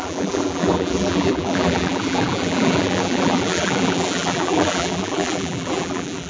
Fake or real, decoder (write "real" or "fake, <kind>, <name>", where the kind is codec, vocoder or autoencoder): fake, vocoder, BigVGAN v2